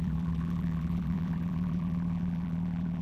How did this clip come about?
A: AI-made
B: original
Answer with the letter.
A